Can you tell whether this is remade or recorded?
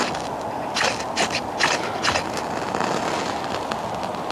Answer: recorded